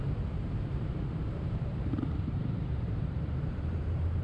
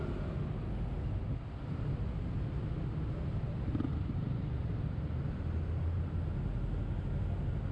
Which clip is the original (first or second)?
second